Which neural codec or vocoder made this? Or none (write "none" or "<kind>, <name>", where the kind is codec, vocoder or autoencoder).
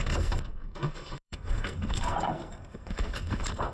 codec, SNAC